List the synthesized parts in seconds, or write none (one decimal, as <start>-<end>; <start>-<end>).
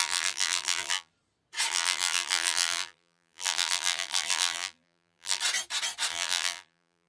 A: 0.0-1.1; 1.7-5.4; 6.1-7.1